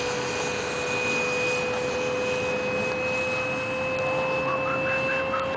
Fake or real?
real